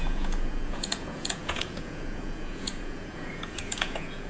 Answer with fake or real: fake